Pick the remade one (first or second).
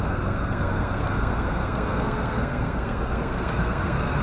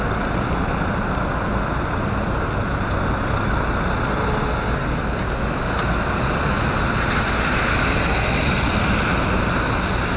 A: first